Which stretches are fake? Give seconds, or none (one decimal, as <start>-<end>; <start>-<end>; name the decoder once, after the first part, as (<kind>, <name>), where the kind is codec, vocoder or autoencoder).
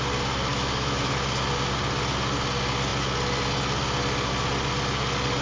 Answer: 0.5-1.1 (autoencoder, DAC-VAE)